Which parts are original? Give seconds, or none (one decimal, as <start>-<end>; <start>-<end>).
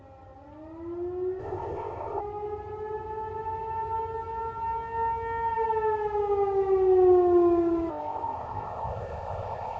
0.0-1.4; 2.2-7.9